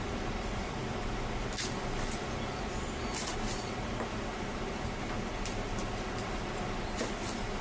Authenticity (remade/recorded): recorded